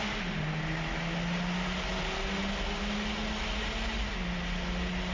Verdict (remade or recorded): recorded